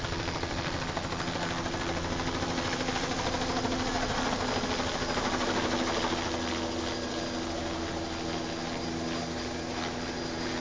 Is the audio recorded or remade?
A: recorded